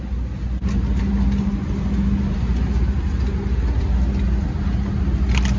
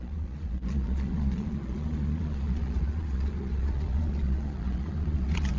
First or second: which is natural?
first